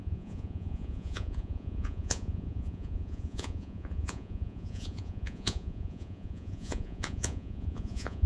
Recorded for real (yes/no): no